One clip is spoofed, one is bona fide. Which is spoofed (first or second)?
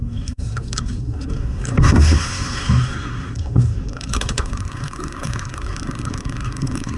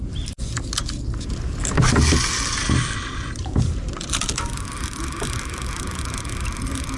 first